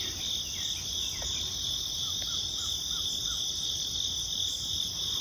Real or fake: real